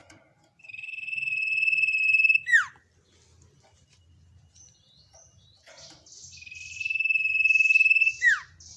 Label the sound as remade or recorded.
recorded